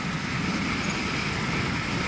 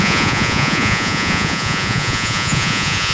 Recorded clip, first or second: first